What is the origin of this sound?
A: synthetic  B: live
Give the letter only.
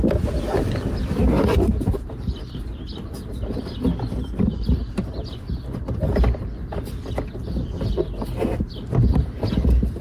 B